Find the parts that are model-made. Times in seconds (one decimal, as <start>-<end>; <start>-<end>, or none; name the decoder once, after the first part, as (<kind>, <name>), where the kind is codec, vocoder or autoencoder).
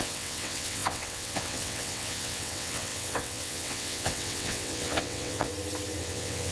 0.0-5.5 (vocoder, WaveNeXt); 6.0-6.5